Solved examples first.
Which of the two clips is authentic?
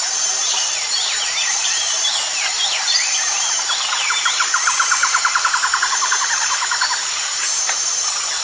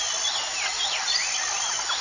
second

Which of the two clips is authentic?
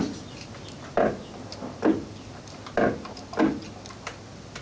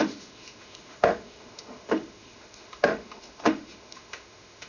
first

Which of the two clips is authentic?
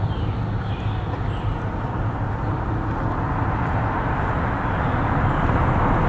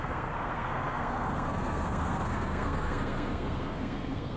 first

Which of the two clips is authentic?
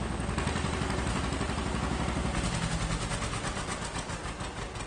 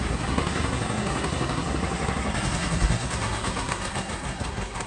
first